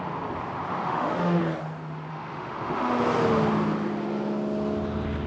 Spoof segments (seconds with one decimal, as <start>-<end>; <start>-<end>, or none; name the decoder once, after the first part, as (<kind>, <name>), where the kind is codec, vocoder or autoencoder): 0.8-1.4 (autoencoder, DAC-VAE); 2.1-3.0